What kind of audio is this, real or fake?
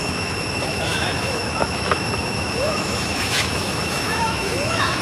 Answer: fake